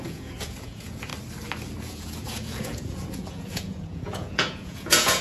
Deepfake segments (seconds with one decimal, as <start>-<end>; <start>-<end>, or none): 0.0-1.1; 1.8-5.2